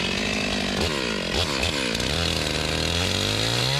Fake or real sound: real